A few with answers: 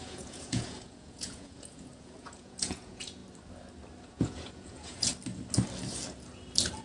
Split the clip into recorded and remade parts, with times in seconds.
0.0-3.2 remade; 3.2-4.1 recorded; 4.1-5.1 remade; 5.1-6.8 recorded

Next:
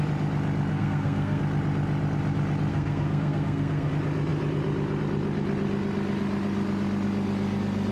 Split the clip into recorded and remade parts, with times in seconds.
0.0-0.7 recorded; 0.7-1.4 remade; 1.4-2.7 recorded; 2.7-3.9 remade; 3.9-7.9 recorded

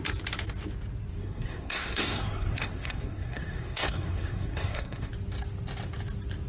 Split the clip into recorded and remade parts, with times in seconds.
0.0-1.2 recorded; 1.2-5.1 remade; 5.1-6.5 recorded